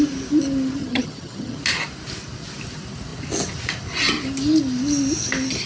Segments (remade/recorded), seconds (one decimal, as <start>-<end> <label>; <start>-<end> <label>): 0.0-0.8 recorded; 0.8-1.6 remade; 1.6-5.7 recorded